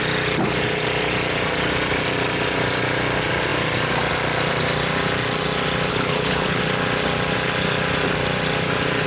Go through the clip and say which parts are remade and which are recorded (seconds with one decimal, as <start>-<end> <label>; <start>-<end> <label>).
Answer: 0.0-5.9 recorded; 5.9-6.6 remade; 6.6-9.1 recorded